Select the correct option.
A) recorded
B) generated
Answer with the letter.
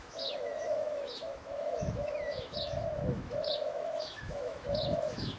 B